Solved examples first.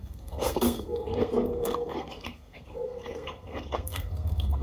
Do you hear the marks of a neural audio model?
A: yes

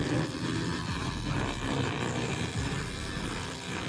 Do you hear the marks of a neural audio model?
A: yes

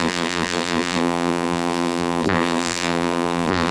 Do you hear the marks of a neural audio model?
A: yes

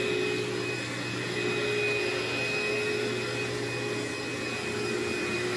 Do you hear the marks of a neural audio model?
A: no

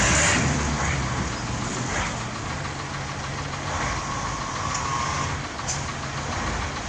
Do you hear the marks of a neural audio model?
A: no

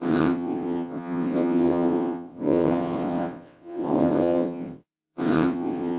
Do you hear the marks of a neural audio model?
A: yes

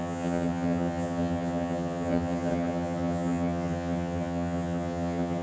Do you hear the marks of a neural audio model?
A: yes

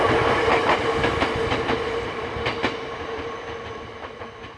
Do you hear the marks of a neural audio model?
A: no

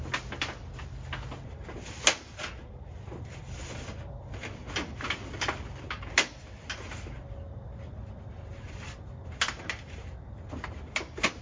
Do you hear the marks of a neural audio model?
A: no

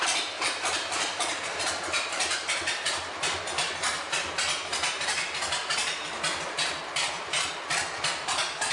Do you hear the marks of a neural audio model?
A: yes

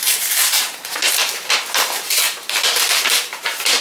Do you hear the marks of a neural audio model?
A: yes